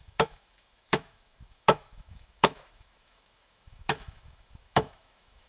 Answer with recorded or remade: remade